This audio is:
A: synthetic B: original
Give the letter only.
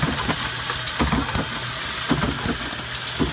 B